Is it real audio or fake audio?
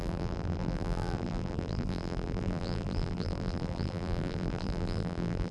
fake